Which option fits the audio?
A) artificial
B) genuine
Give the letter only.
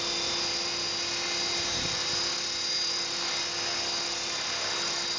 B